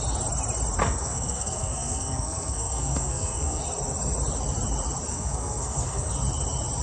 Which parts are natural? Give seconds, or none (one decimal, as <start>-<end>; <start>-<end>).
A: 0.0-0.8; 3.6-5.1; 6.1-6.8